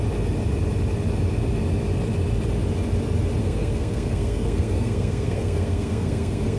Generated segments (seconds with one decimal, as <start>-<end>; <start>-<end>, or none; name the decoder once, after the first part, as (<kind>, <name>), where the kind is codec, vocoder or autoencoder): 3.4-6.6 (codec, SNAC)